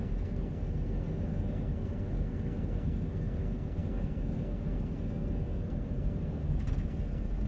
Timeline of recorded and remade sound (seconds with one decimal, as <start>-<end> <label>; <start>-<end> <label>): 0.0-7.5 remade